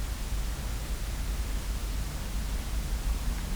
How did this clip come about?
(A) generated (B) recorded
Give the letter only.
B